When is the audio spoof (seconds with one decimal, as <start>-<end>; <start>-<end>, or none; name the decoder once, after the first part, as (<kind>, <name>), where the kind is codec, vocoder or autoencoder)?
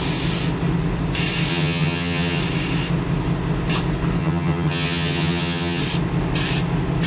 1.5-2.4 (vocoder, HiFi-GAN); 4.2-5.8